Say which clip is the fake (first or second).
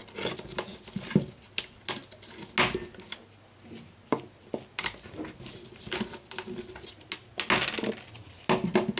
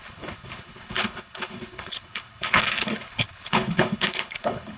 second